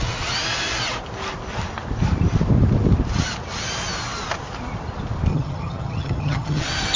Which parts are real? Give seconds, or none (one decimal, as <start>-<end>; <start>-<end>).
0.0-5.3; 6.6-7.0